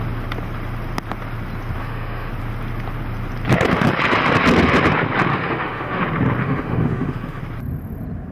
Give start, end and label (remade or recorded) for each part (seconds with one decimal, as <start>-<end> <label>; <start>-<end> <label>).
0.0-1.8 recorded; 1.8-2.3 remade; 2.3-5.3 recorded; 5.3-6.0 remade; 6.0-6.4 recorded; 6.4-7.4 remade; 7.4-8.3 recorded